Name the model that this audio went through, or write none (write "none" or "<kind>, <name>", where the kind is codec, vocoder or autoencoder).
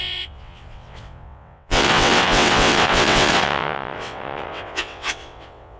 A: vocoder, WaveNeXt